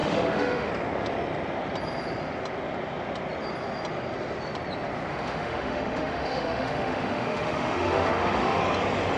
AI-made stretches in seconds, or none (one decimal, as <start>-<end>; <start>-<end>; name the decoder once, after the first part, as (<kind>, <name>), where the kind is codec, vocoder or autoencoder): 0.0-0.7 (autoencoder, DAC-VAE); 5.1-8.6